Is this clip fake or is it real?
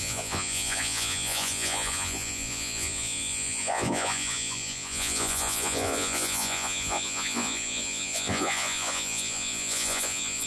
fake